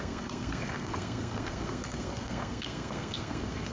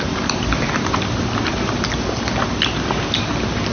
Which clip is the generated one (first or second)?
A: first